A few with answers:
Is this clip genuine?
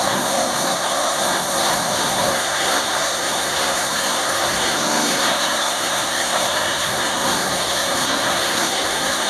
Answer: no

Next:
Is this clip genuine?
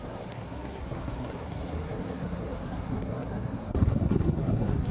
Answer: no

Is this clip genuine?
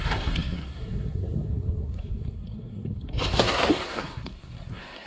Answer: no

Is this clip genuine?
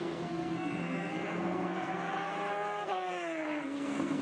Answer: no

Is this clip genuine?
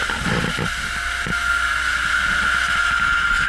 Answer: yes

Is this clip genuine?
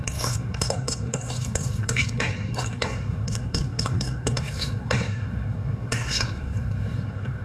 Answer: no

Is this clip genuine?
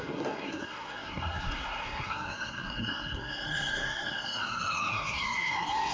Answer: no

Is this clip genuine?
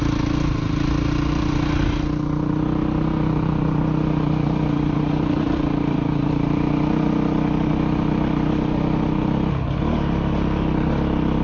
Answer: yes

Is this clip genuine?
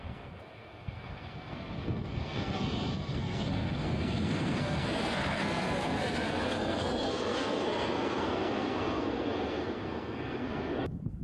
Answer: no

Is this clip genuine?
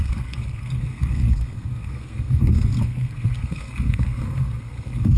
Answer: no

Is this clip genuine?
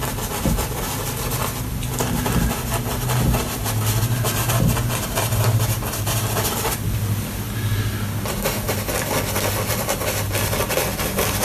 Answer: yes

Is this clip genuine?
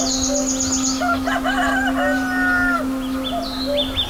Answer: yes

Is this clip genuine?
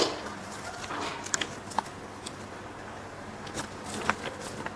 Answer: yes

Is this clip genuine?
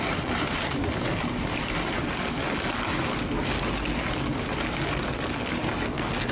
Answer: yes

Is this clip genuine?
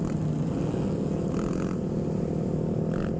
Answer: yes